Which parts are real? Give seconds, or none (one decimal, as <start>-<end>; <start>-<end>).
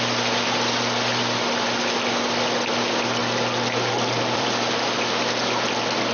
0.0-3.2; 4.7-6.1